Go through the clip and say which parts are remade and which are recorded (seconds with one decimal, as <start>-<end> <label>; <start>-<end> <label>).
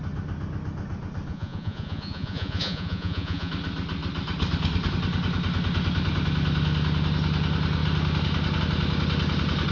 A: 0.0-1.3 recorded; 1.3-3.5 remade; 3.5-9.7 recorded